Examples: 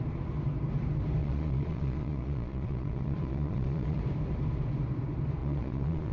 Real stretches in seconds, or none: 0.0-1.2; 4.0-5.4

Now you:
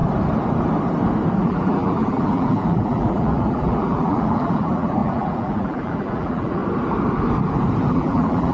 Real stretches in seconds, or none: 0.0-1.4; 6.6-7.9

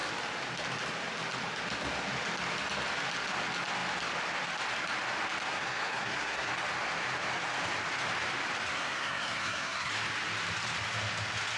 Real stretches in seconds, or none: 0.0-5.5; 6.5-8.7; 9.9-11.6

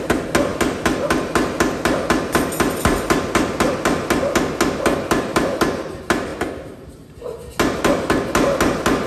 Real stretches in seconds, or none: 0.0-9.1